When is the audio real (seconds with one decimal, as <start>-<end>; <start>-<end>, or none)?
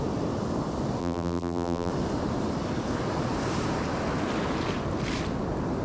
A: 0.0-1.0; 1.9-5.8